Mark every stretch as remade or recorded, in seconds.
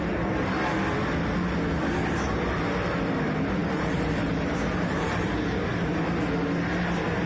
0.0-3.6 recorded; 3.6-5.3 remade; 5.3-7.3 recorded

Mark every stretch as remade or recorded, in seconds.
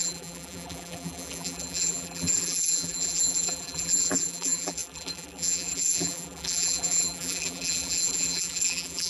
0.0-9.1 remade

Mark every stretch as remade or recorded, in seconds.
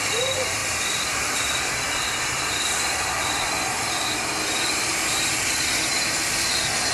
0.0-6.9 recorded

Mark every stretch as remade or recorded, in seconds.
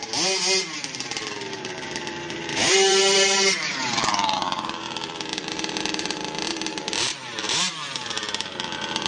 0.0-9.1 remade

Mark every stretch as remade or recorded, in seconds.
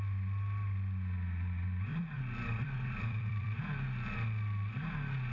0.0-1.9 recorded; 1.9-3.6 remade; 3.6-5.3 recorded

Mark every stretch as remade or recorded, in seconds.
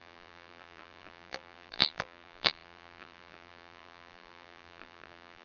0.0-5.4 remade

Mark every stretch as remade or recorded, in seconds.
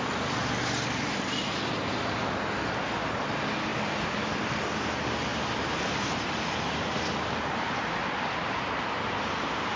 0.0-3.7 recorded; 3.7-4.2 remade; 4.2-5.3 recorded; 5.3-8.9 remade; 8.9-9.8 recorded